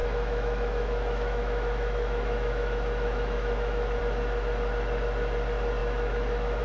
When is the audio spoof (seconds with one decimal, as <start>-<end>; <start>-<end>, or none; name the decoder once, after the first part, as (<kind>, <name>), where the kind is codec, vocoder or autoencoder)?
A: 0.0-4.0 (autoencoder, DAC-VAE); 5.8-6.6